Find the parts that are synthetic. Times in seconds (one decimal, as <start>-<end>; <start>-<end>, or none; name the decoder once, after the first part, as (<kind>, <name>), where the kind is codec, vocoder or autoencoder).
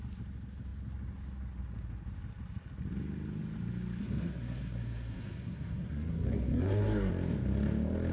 4.0-7.1 (codec, SNAC)